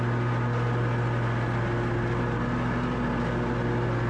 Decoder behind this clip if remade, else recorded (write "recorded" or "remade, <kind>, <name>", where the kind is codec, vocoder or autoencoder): recorded